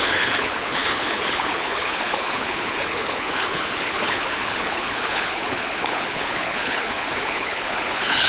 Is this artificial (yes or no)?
yes